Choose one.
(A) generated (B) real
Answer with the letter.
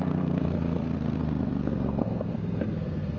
A